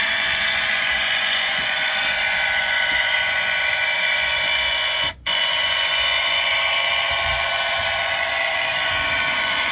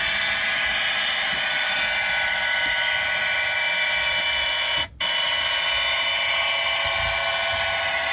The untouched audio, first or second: second